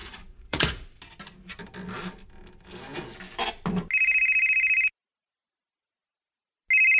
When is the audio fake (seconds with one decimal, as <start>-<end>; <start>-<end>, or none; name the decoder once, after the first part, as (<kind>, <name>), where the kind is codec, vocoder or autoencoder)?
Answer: 0.0-1.0 (vocoder, Vocos)